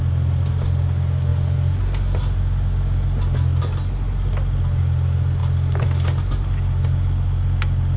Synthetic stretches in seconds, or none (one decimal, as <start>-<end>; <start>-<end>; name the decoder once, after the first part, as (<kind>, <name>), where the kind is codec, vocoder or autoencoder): none